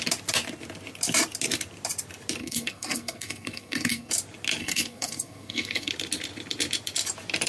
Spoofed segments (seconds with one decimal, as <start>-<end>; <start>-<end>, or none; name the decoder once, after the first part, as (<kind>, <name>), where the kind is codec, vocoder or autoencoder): 2.4-4.1 (codec, SNAC); 4.6-5.9